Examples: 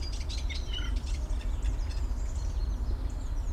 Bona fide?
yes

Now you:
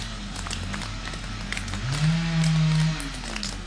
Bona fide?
yes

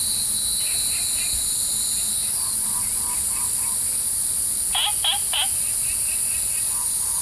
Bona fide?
yes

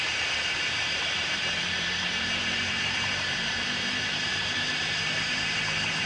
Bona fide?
no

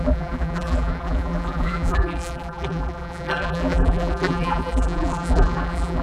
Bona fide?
no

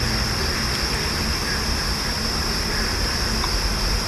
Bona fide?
no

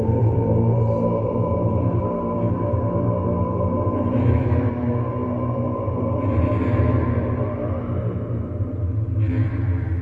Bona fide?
no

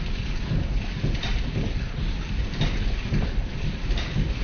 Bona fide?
no